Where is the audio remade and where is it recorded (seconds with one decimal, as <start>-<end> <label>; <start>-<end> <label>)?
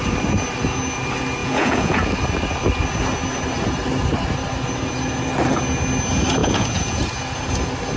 0.0-1.4 recorded; 1.4-2.1 remade; 2.1-6.4 recorded; 6.4-7.0 remade; 7.0-8.0 recorded